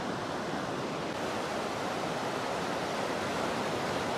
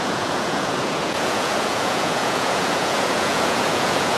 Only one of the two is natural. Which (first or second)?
first